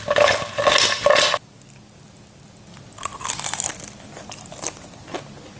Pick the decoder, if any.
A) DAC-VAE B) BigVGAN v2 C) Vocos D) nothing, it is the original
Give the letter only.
D